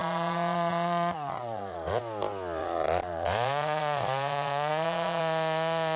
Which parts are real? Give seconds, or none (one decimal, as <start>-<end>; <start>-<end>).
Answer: 2.0-2.6; 5.2-6.0